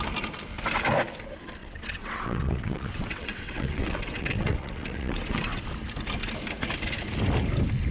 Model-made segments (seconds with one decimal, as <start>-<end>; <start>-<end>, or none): 1.6-5.6